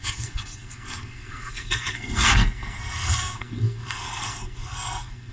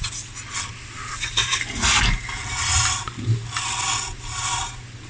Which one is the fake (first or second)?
first